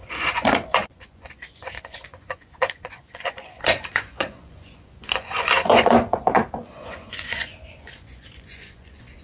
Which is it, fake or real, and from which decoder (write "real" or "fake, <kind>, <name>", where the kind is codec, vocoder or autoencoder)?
fake, vocoder, Vocos